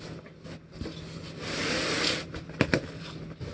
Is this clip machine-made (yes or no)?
no